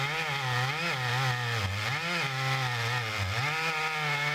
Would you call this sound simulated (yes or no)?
no